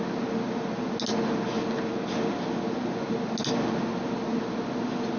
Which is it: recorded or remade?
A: recorded